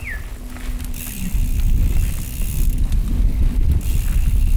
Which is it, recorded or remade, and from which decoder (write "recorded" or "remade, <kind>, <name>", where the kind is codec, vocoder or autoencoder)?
recorded